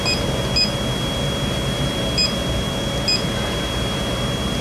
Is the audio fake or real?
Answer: real